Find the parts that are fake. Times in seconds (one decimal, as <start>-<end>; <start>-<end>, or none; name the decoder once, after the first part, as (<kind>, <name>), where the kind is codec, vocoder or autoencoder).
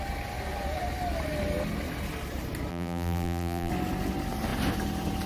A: 2.7-3.7 (vocoder, BigVGAN v2)